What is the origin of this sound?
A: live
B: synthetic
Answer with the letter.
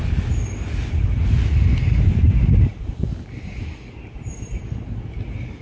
A